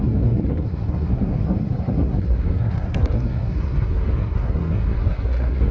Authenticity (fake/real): fake